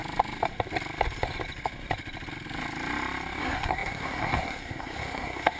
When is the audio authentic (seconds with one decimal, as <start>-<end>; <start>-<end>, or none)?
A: 0.0-3.4